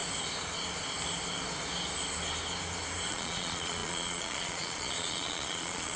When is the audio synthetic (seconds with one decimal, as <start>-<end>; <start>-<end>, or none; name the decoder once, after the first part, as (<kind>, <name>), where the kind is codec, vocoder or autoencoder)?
3.1-6.0 (vocoder, Vocos)